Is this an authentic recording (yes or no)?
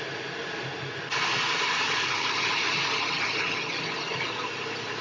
yes